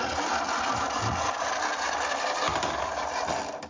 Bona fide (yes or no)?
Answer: yes